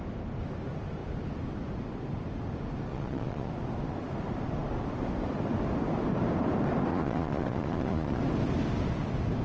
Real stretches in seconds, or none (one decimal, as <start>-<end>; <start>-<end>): 0.0-2.9; 3.5-6.9; 8.2-9.4